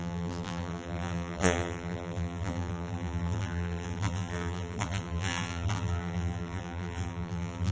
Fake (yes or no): yes